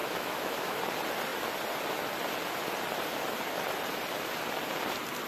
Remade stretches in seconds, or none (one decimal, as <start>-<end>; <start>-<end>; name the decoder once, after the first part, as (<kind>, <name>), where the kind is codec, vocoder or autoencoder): 0.0-0.8 (autoencoder, DAC-VAE)